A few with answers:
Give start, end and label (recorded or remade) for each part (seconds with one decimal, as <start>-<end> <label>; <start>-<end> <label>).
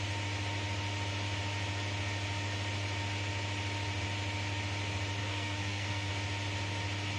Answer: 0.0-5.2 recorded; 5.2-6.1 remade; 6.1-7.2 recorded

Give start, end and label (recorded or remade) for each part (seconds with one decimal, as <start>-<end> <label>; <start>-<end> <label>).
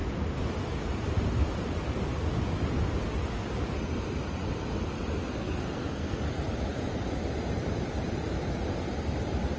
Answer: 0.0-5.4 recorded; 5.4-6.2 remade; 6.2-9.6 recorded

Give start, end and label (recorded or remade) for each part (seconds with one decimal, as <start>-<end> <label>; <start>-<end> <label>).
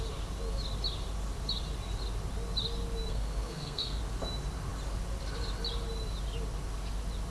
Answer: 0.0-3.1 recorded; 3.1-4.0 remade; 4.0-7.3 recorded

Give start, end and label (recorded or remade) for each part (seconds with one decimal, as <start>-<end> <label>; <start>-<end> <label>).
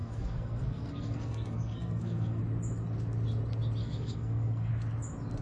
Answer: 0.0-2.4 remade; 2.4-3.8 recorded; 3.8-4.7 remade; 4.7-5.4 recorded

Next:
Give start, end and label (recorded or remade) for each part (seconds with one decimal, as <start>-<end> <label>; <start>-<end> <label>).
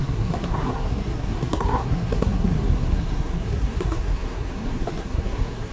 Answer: 0.0-5.7 remade